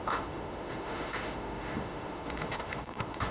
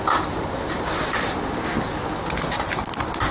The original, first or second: second